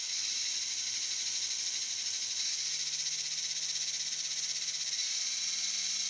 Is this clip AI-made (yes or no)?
no